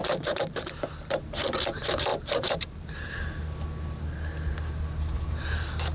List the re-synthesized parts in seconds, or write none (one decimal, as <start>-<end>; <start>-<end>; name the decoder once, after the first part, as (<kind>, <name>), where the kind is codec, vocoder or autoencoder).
0.0-1.2 (vocoder, BigVGAN v2); 2.1-3.1